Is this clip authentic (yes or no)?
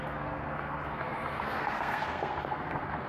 no